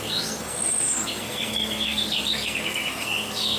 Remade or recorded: remade